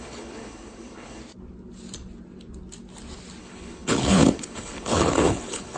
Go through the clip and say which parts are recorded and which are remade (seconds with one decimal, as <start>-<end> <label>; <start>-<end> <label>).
0.0-1.2 remade; 1.2-3.4 recorded; 3.4-5.8 remade